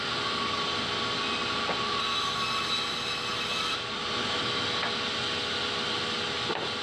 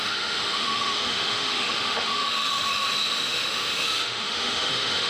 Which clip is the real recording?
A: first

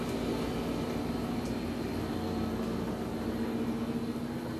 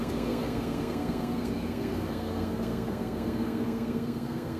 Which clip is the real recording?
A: first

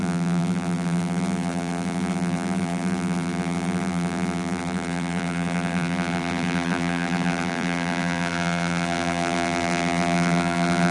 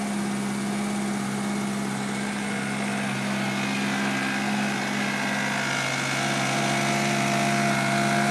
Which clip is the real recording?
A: second